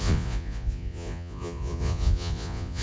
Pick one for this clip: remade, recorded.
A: remade